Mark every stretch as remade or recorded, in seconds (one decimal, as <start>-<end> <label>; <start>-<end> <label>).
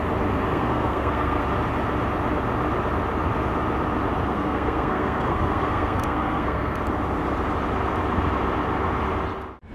0.0-0.5 recorded; 0.5-1.4 remade; 1.4-4.3 recorded; 4.3-6.8 remade; 6.8-9.7 recorded